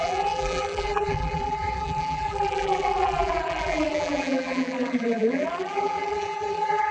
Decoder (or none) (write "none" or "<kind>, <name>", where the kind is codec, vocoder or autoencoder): vocoder, BigVGAN v2